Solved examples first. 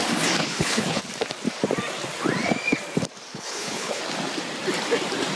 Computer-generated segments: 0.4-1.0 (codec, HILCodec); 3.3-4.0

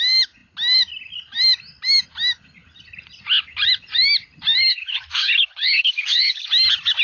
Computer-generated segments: 4.7-6.5 (codec, HILCodec)

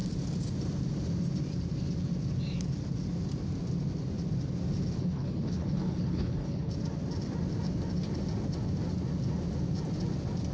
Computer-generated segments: 5.0-6.7 (codec, HILCodec)

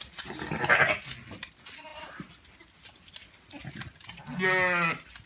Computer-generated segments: none

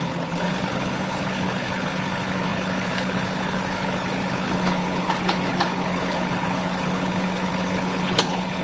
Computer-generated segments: 0.0-8.6 (codec, HILCodec)

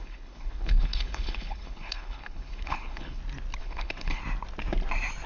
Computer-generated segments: 0.0-3.2 (codec, HILCodec); 3.6-4.2

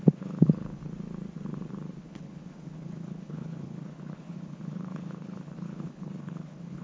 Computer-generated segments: 0.0-0.8 (codec, HILCodec); 2.0-6.8